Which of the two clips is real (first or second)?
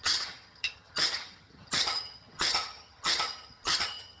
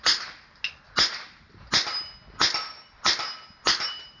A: second